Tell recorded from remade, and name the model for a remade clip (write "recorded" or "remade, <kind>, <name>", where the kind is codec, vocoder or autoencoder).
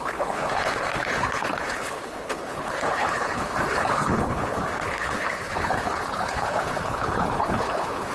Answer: remade, codec, HILCodec